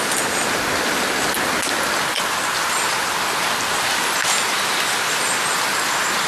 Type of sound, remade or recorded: recorded